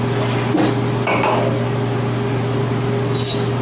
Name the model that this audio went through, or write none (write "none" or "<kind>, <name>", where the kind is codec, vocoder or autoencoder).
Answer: none